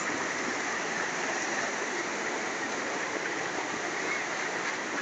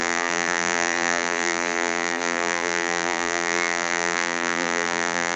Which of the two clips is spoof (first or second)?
second